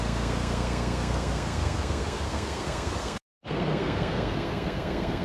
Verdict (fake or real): fake